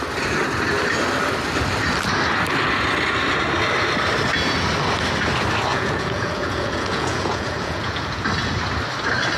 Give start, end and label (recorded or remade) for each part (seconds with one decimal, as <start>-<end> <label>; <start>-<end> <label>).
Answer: 0.0-5.7 recorded; 5.7-8.2 remade; 8.2-9.4 recorded